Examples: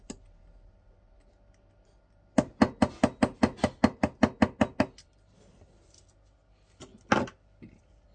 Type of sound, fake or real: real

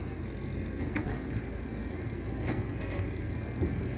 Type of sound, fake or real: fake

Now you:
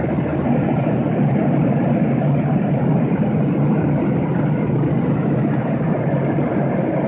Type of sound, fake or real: real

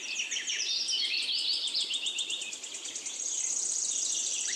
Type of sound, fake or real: fake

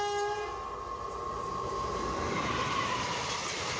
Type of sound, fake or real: real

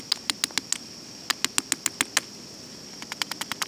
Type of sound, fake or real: real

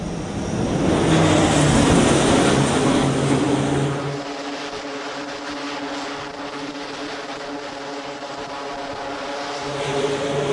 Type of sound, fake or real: real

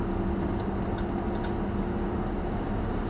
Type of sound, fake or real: real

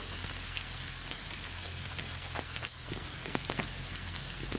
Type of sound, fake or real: fake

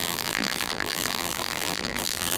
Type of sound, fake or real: fake